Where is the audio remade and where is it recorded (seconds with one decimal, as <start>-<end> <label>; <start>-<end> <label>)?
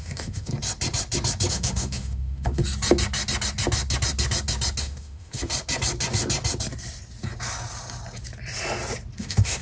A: 0.0-0.5 remade; 0.5-1.5 recorded; 1.5-2.6 remade; 2.6-4.8 recorded; 4.8-5.4 remade; 5.4-9.2 recorded; 9.2-9.6 remade